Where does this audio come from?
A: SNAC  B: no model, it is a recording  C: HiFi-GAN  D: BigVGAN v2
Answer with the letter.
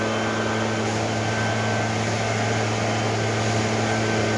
B